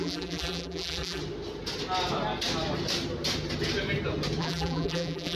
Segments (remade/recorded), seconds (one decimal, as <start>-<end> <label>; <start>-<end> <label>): 0.0-1.2 remade; 1.2-4.4 recorded; 4.4-5.4 remade